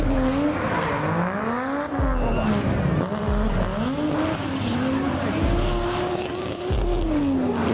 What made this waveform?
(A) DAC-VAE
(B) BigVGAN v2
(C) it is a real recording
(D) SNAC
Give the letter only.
C